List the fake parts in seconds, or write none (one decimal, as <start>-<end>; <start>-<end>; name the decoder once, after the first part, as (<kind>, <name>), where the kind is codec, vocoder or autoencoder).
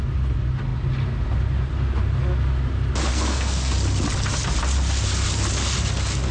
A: 3.1-3.7 (codec, SNAC)